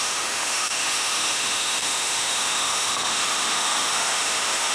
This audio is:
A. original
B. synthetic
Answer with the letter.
B